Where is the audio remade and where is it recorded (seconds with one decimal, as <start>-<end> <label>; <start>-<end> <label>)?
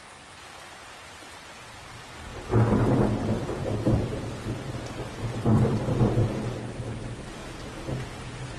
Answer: 0.0-7.4 remade; 7.4-8.6 recorded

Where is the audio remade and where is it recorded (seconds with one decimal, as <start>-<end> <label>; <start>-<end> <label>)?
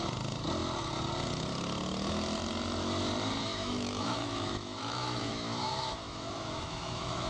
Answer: 0.0-3.5 recorded; 3.5-7.3 remade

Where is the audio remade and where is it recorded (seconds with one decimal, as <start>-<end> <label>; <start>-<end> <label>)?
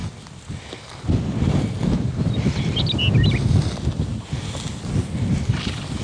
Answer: 0.0-6.0 recorded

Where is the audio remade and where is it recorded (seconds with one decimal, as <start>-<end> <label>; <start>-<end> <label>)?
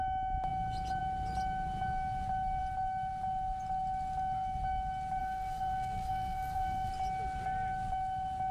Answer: 0.0-5.2 recorded; 5.2-6.9 remade; 6.9-8.5 recorded